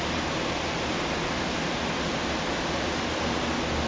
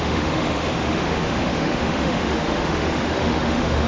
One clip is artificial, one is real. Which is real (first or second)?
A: first